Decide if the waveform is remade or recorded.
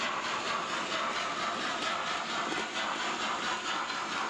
remade